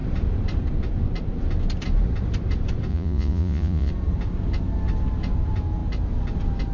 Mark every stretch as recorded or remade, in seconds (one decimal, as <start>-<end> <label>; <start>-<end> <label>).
0.0-2.9 recorded; 2.9-3.9 remade; 3.9-6.7 recorded